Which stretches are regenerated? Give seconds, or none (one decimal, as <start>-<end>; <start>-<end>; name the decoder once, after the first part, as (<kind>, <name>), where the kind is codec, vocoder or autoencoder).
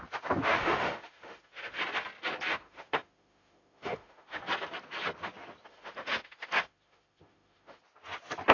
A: 0.6-1.8 (autoencoder, DAC-VAE); 2.6-4.4; 5.7-7.8